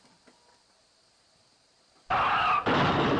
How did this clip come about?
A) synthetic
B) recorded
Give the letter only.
B